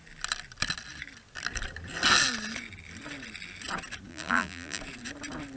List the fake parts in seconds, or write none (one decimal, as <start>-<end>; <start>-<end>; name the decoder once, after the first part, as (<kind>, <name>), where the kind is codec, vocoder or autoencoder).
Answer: 4.1-4.8 (vocoder, BigVGAN v2)